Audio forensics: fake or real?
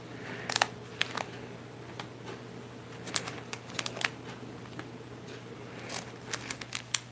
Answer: real